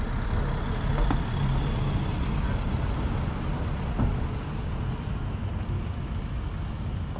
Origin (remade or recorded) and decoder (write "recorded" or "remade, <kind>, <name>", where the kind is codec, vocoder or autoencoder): recorded